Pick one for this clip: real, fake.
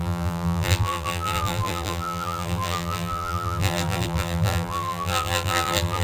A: fake